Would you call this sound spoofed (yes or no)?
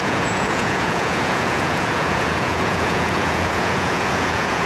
yes